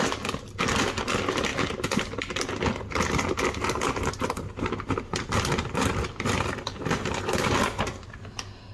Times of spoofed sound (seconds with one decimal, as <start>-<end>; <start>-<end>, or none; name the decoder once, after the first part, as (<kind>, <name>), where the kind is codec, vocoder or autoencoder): none